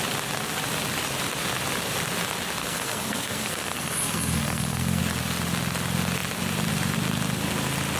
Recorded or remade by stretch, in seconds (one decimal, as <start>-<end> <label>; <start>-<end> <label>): 0.0-2.6 recorded; 2.6-5.0 remade; 5.0-8.0 recorded